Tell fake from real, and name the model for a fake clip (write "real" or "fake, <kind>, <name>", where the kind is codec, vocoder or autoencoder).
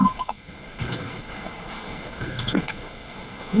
fake, codec, SNAC